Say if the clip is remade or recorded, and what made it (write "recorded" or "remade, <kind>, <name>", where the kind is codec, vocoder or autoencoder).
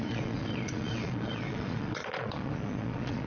remade, vocoder, Vocos